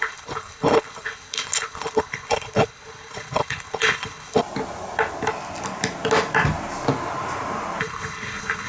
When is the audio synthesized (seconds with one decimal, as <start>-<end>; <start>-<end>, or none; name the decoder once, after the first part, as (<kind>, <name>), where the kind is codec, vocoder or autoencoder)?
0.0-4.4 (codec, HILCodec); 7.8-8.7